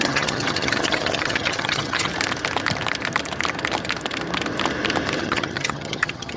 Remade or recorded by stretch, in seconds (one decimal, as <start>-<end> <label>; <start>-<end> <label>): 0.0-2.1 remade; 2.1-5.2 recorded; 5.2-6.4 remade